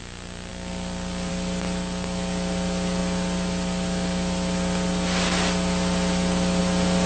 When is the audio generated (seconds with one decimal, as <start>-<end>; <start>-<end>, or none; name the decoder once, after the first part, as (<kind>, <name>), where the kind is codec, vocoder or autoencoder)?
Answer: none